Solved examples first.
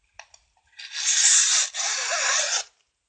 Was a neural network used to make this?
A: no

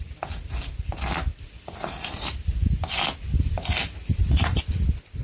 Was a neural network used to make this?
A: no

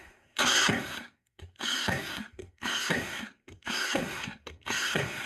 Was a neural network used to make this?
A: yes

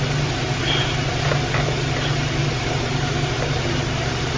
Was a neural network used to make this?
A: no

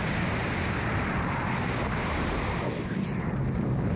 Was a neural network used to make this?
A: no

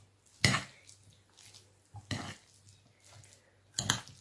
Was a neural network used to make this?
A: no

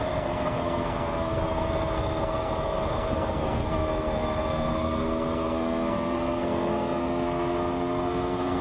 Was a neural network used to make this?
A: yes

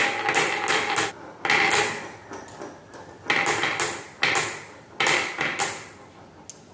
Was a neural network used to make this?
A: no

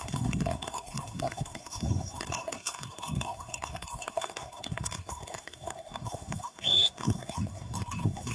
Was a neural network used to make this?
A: yes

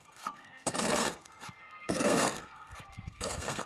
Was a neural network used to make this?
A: yes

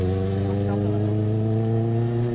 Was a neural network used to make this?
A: no